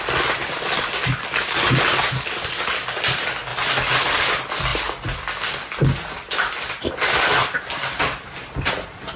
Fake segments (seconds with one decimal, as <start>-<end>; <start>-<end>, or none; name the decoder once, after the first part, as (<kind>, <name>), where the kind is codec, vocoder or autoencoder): none